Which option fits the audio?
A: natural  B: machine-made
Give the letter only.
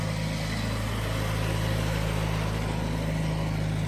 A